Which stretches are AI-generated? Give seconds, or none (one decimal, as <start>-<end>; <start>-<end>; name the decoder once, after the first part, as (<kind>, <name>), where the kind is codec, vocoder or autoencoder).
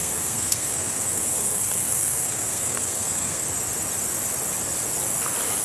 0.0-3.4 (codec, SNAC)